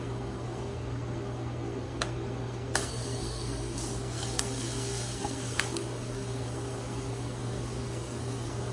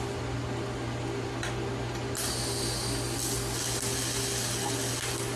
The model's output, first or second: first